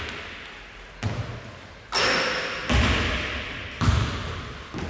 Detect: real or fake real